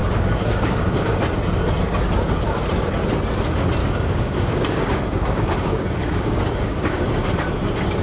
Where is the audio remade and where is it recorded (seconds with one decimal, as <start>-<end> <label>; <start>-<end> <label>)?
0.0-1.2 remade; 1.2-3.8 recorded; 3.8-7.0 remade; 7.0-8.0 recorded